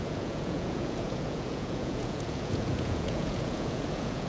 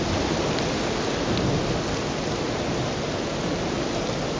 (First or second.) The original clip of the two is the second